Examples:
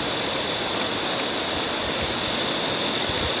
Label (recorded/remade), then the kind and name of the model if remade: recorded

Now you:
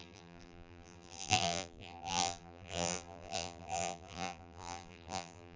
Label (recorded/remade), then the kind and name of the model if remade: remade, vocoder, BigVGAN v2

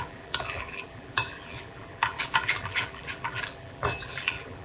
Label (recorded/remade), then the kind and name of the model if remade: remade, vocoder, BigVGAN v2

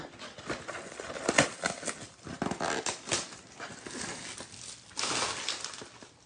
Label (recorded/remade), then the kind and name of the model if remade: recorded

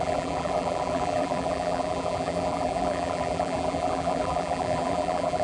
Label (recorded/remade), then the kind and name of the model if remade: remade, vocoder, BigVGAN v2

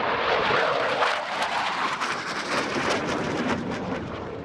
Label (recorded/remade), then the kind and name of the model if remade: remade, vocoder, BigVGAN v2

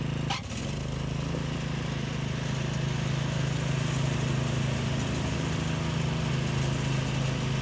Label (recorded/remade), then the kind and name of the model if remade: recorded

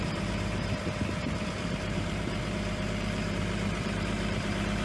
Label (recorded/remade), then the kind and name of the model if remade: remade, vocoder, BigVGAN v2